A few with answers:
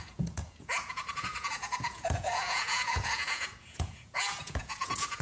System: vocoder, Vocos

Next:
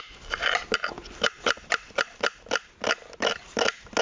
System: none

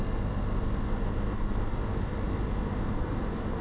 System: none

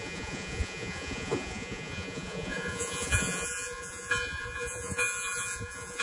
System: vocoder, Vocos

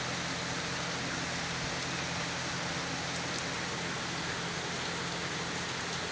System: none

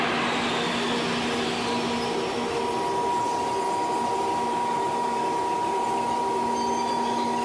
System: none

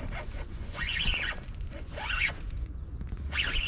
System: vocoder, Vocos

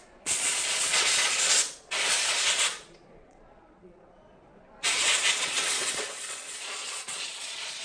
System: vocoder, Vocos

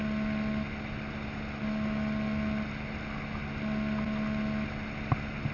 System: none